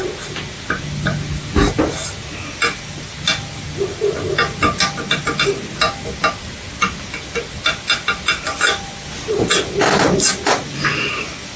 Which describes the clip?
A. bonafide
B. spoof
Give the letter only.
A